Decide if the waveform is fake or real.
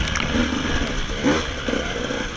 real